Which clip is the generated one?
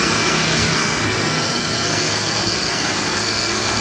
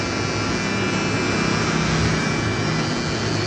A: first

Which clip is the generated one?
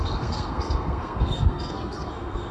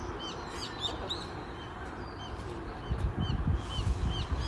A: first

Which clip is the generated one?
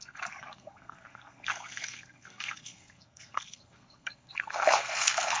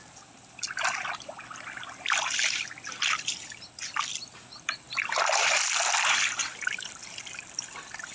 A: first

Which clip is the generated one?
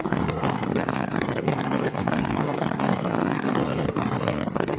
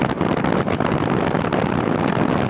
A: first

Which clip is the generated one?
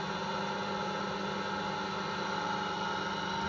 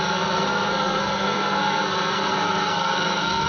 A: second